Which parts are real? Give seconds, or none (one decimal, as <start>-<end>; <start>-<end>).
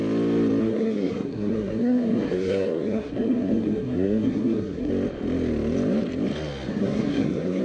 0.0-0.6; 4.9-6.7